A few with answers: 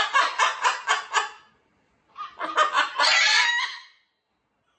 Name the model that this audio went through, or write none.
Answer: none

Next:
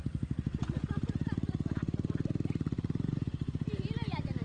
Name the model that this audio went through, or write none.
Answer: none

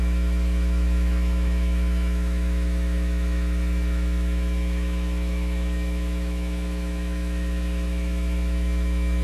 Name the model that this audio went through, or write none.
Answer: autoencoder, DAC-VAE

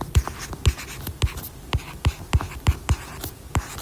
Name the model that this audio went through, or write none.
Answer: none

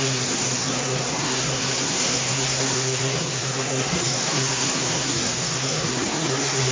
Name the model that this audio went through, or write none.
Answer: codec, SNAC